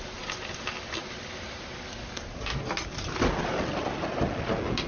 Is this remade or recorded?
recorded